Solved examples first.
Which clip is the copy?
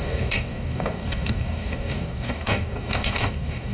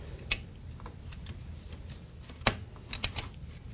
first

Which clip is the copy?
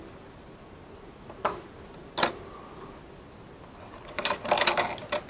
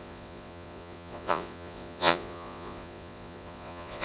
second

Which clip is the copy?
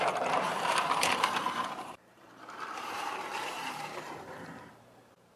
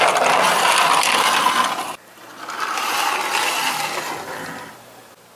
first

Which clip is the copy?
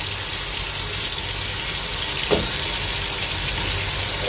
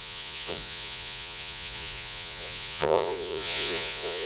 second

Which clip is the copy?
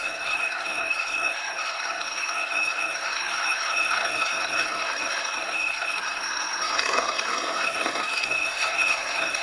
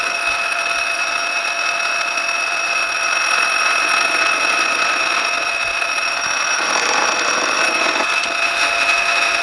first